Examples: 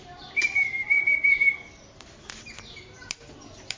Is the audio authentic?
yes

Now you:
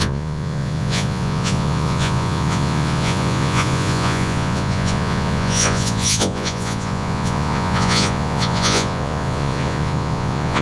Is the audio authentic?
no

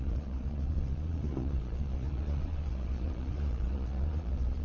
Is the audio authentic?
no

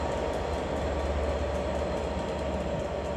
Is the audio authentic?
yes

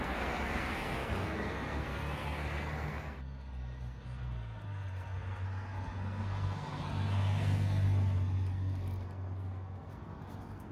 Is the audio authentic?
no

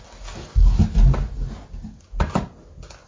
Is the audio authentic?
yes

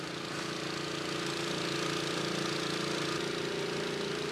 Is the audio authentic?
yes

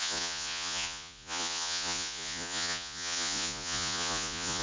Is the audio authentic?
no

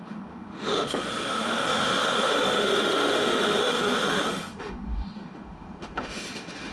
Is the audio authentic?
no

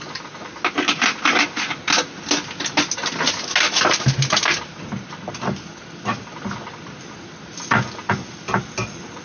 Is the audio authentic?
yes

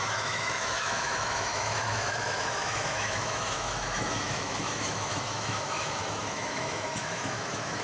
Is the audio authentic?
no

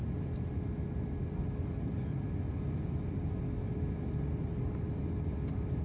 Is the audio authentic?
yes